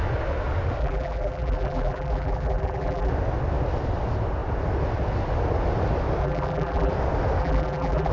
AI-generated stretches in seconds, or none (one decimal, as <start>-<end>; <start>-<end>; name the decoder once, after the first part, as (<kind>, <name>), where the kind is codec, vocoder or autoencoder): 0.8-3.1 (vocoder, BigVGAN v2); 6.2-6.9; 7.4-8.1